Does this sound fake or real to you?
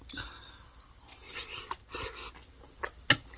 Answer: real